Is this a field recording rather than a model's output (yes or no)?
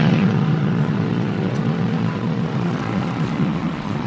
no